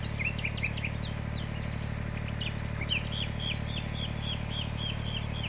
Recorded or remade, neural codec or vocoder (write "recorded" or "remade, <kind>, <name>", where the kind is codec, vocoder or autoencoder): recorded